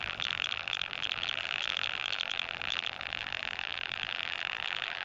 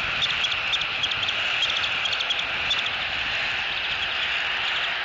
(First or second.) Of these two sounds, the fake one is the first